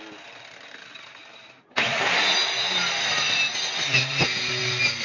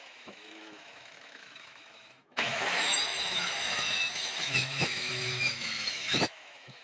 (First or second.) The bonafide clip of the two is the first